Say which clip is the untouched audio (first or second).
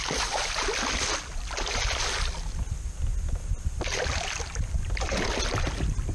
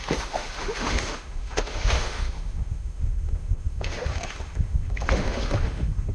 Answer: first